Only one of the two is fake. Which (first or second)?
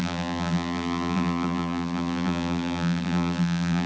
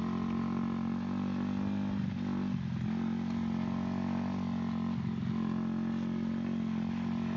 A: first